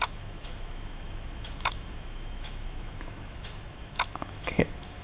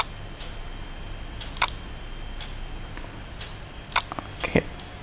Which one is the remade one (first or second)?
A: first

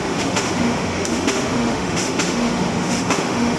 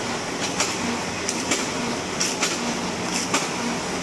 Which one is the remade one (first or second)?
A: first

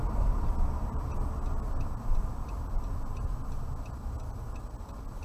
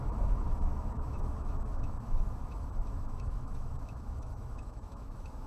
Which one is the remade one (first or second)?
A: second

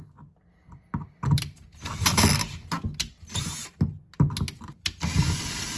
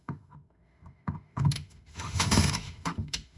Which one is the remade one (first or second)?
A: second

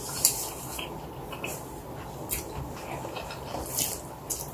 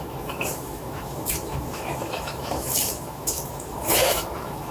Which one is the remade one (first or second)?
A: second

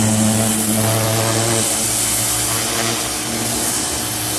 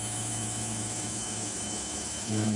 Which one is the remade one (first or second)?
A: second